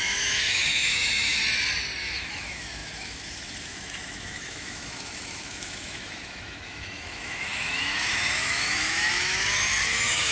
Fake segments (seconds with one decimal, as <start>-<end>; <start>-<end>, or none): 0.0-1.4; 2.0-10.3